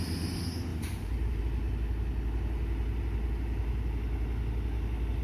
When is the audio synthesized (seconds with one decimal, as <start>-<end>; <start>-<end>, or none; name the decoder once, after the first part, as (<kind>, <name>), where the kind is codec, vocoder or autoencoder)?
0.7-1.4 (vocoder, BigVGAN v2)